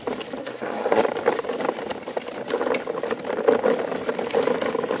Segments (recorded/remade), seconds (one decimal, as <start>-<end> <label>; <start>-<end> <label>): 0.0-0.4 recorded; 0.4-1.0 remade; 1.0-5.0 recorded